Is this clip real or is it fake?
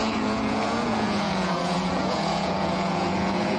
fake